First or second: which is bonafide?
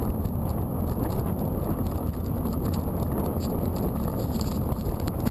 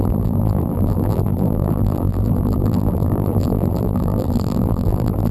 first